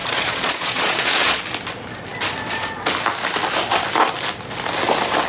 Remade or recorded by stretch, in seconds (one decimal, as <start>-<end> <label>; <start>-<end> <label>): 0.0-1.4 remade; 1.4-5.3 recorded